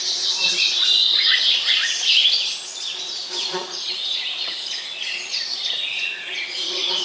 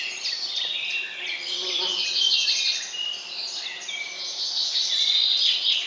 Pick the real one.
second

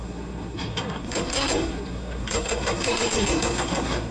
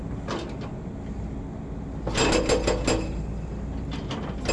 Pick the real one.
second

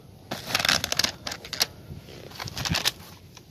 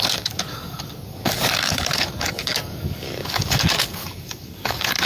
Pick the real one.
first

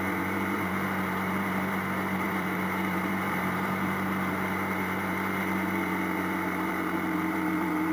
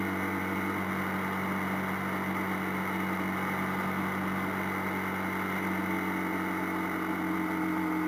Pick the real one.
second